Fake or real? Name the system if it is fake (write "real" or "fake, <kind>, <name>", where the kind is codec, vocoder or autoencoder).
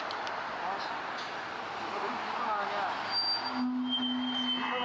real